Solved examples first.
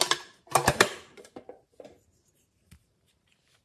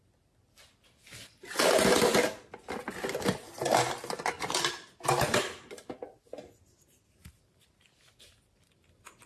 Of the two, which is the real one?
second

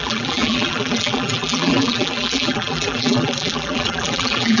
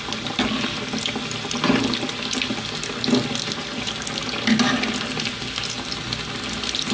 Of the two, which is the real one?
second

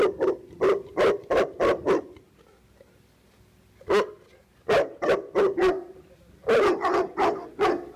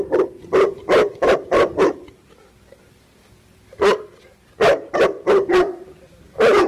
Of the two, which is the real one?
first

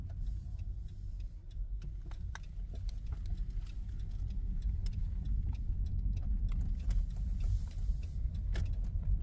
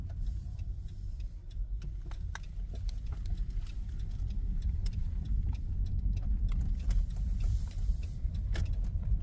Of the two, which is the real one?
first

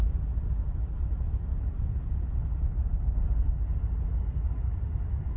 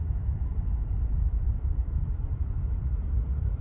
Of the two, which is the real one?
first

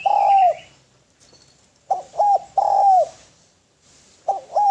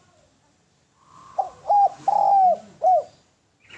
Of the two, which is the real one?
second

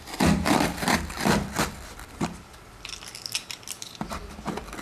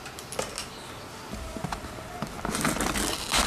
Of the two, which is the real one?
second